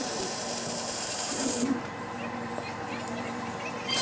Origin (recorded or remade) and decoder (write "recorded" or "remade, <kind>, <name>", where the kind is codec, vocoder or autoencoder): remade, vocoder, BigVGAN v2